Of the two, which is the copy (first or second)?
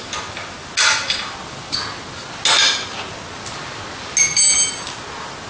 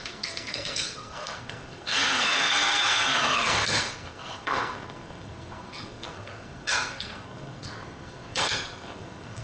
second